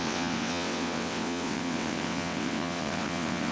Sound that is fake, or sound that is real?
fake